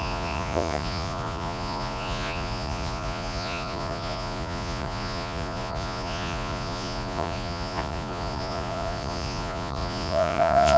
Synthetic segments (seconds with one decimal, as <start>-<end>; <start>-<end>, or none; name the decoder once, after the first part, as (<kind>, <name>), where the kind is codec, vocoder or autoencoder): 0.0-10.8 (vocoder, Vocos)